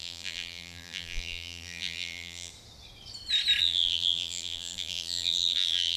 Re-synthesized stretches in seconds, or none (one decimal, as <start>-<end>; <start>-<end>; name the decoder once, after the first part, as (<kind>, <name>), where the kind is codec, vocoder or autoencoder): 0.0-2.5 (vocoder, BigVGAN v2); 3.6-6.0